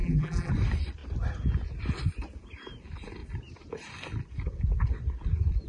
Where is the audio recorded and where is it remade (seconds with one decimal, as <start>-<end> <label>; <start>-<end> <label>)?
0.0-0.5 remade; 0.5-5.7 recorded